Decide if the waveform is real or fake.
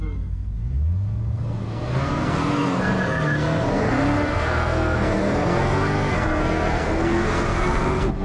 fake